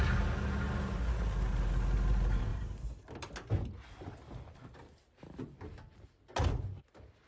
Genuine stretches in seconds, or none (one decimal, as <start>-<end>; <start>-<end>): 0.0-7.3